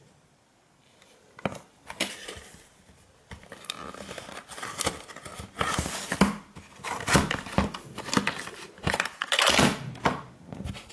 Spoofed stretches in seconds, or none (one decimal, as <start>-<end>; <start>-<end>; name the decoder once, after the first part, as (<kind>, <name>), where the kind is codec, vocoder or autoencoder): none